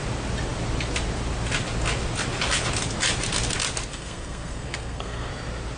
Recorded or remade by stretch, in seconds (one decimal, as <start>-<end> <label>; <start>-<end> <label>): 0.0-3.9 recorded; 3.9-5.3 remade; 5.3-5.8 recorded